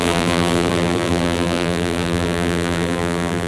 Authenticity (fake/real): fake